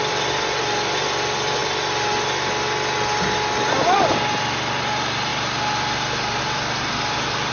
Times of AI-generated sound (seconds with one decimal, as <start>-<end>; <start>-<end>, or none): 0.0-1.6; 3.7-7.5